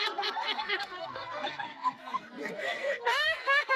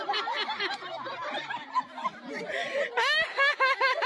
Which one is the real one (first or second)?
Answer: second